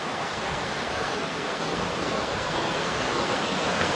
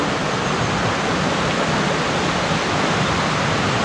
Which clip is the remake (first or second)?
first